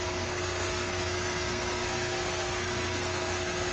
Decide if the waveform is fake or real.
fake